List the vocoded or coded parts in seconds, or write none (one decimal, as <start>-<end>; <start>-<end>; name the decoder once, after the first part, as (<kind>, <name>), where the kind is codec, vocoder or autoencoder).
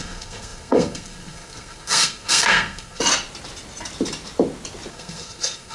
0.0-3.0 (codec, SNAC); 4.9-5.7